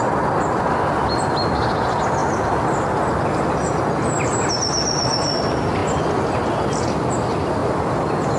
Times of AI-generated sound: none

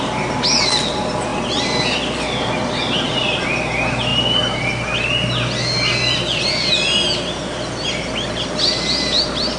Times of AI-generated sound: none

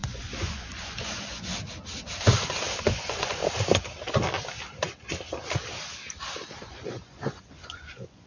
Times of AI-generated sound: 0.0-1.5 (vocoder, Vocos); 2.8-3.4; 6.7-8.3

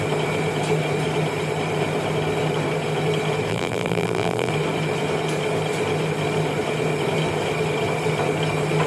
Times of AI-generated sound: 3.5-4.5 (vocoder, BigVGAN v2)

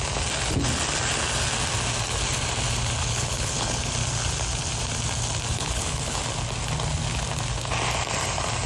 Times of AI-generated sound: 3.0-3.8 (codec, HILCodec); 5.5-6.2